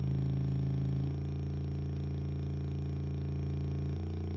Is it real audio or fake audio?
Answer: real